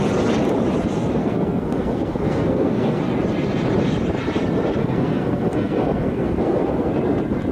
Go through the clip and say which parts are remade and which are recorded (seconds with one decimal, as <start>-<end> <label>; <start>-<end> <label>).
0.0-1.2 recorded; 1.2-3.0 remade; 3.0-4.8 recorded; 4.8-6.9 remade; 6.9-7.5 recorded